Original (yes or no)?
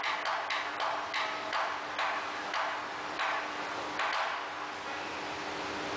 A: yes